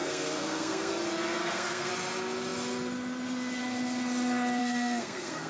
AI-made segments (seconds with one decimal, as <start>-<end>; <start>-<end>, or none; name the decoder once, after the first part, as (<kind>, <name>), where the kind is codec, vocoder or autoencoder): 0.0-0.9 (codec, SNAC); 1.4-1.9; 4.6-5.5